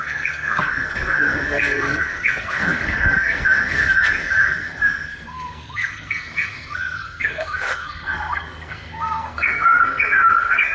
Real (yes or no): no